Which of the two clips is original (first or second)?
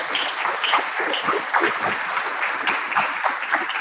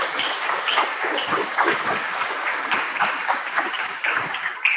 first